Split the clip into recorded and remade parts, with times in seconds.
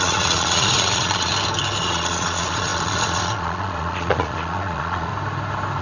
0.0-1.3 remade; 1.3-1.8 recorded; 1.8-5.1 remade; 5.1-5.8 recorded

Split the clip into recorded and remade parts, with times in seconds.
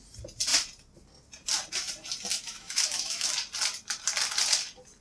0.0-2.3 recorded; 2.3-3.3 remade; 3.3-5.0 recorded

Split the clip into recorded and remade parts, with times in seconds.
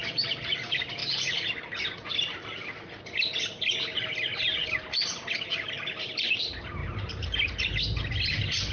0.0-8.7 recorded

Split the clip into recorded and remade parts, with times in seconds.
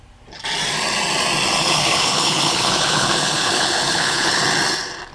0.0-1.6 recorded; 1.6-4.4 remade; 4.4-5.1 recorded